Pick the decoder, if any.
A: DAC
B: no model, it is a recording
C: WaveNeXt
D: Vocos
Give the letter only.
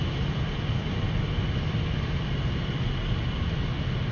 B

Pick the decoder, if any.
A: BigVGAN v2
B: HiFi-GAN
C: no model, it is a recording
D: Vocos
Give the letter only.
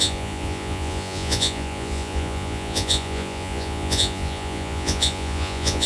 D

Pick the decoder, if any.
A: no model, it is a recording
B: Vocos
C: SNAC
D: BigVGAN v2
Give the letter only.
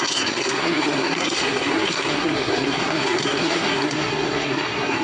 C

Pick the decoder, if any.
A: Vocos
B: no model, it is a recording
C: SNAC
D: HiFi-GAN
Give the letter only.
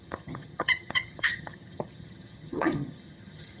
D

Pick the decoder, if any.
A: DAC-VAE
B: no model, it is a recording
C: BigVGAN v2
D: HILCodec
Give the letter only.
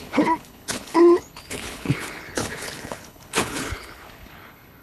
D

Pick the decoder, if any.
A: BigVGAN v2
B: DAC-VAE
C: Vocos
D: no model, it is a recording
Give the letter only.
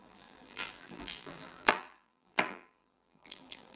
A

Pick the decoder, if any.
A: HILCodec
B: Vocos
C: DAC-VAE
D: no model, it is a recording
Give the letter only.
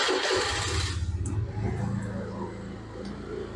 D